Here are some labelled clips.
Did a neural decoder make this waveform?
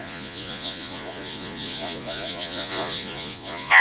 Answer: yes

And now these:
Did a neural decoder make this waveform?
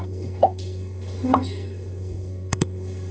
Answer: yes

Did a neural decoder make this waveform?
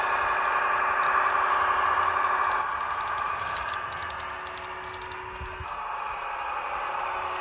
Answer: no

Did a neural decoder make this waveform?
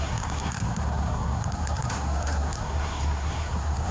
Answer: yes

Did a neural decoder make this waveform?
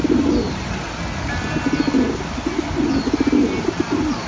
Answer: no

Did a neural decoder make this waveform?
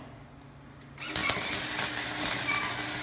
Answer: no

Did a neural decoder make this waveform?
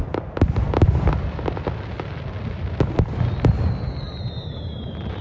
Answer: yes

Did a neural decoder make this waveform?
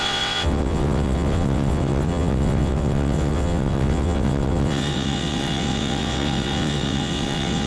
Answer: yes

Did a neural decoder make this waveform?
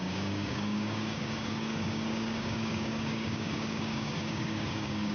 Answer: yes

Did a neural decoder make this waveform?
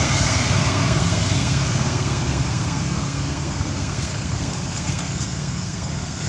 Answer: yes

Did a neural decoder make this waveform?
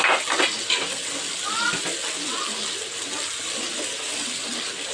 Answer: no